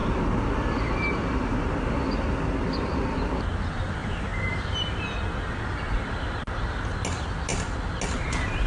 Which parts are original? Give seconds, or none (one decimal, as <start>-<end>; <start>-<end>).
0.0-4.0; 5.0-8.7